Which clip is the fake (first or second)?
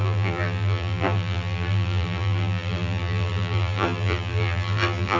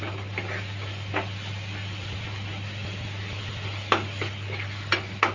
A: first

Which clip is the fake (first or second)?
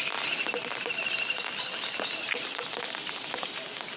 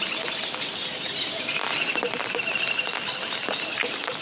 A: second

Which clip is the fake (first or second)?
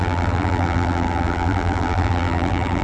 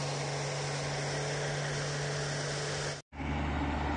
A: first